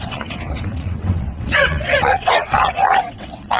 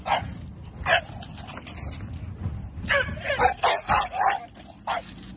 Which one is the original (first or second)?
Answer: second